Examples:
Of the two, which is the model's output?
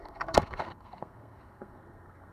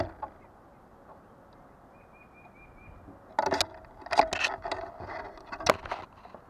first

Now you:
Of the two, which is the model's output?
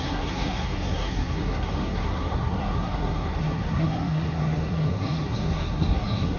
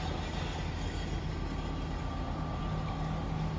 first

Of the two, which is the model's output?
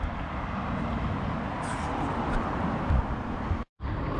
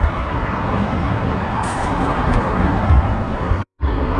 second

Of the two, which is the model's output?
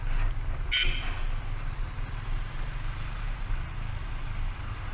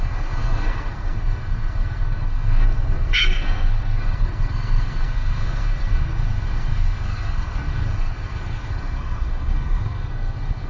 second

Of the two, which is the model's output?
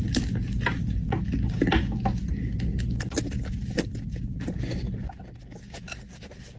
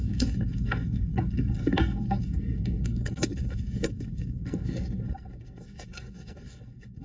second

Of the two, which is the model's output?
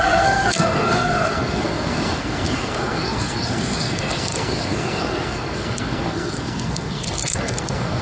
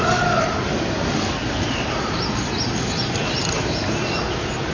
first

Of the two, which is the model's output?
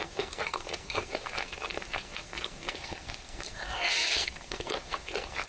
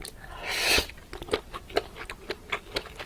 first